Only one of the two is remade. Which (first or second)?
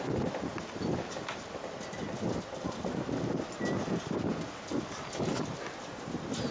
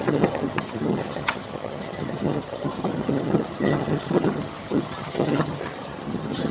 second